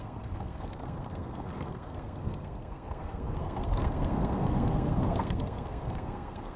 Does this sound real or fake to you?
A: fake